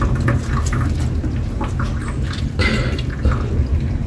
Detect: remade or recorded recorded